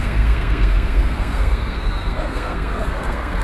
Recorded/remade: remade